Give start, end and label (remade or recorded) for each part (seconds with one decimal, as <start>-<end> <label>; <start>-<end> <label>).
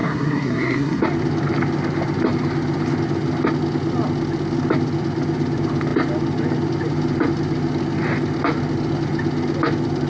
0.0-1.0 remade; 1.0-10.1 recorded